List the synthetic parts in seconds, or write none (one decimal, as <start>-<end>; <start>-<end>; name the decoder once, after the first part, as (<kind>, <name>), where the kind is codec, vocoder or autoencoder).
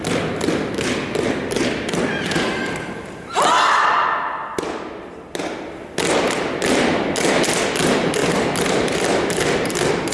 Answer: none